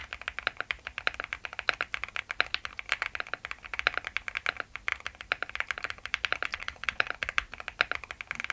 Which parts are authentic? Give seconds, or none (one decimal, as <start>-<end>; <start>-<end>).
0.0-6.5; 7.1-8.5